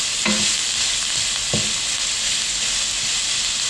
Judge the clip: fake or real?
real